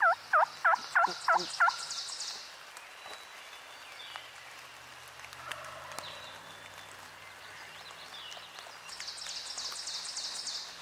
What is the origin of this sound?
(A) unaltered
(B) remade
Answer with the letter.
A